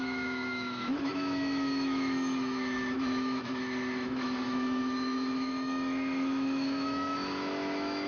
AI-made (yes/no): yes